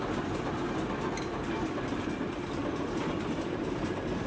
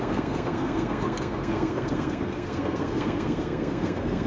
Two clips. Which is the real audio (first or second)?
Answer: first